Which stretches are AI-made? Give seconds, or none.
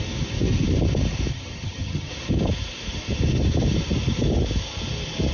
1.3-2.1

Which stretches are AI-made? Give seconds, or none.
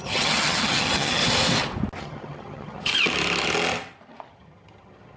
0.0-1.2; 2.0-2.9; 4.3-5.2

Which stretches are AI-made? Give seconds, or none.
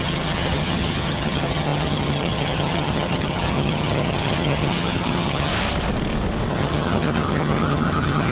0.0-5.5; 6.5-8.3